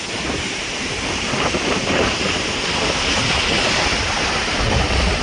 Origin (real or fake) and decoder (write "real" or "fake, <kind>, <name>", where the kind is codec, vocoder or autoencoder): real